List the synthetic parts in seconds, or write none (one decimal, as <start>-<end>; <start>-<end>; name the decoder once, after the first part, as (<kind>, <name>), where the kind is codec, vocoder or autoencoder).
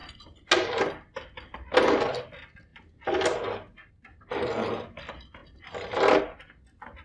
none